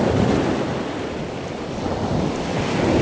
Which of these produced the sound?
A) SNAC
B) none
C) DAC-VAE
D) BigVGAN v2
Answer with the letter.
B